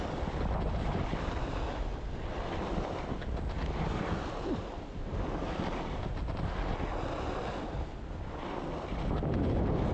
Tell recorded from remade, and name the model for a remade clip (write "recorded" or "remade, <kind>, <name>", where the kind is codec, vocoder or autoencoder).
recorded